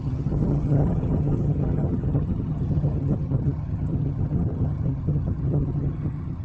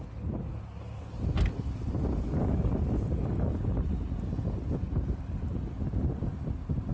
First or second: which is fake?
first